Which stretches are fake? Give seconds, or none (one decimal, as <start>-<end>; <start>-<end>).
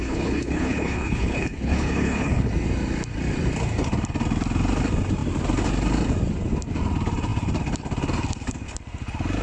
0.0-2.5